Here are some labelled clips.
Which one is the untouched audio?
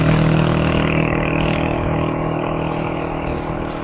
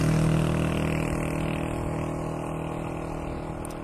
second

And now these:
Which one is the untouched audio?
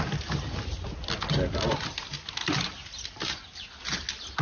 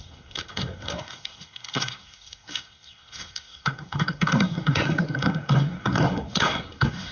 first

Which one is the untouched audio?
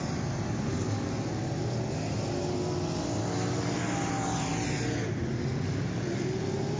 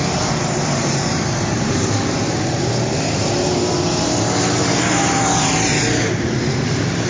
first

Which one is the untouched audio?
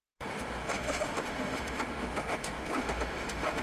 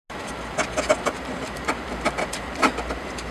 second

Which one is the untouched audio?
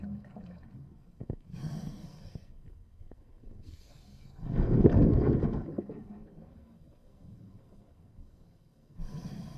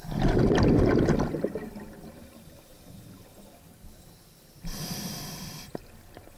second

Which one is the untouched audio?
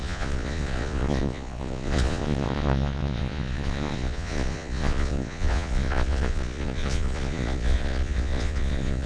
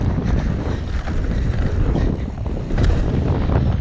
second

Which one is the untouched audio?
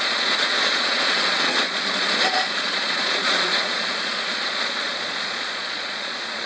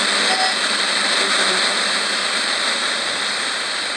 second